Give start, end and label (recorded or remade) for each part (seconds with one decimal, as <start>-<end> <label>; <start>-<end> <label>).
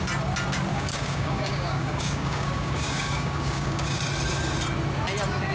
0.0-0.7 recorded; 0.7-4.0 remade; 4.0-5.5 recorded